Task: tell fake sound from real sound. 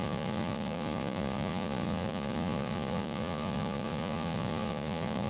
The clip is fake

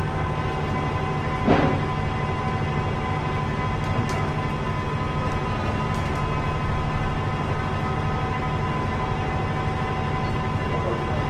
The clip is real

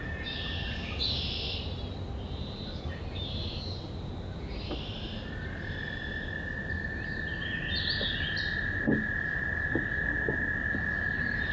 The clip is real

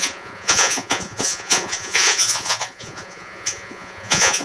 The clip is fake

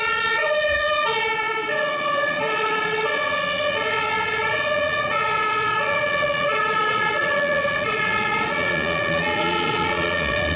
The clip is fake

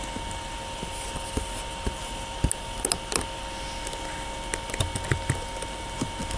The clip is real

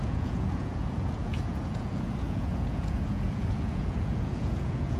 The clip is fake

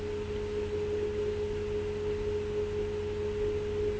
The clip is real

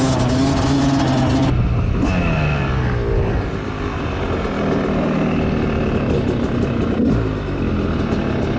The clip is real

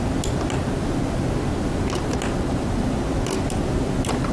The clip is real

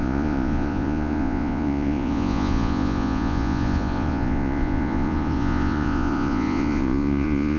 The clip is fake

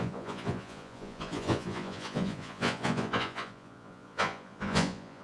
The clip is fake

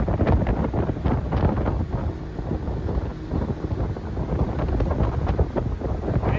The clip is real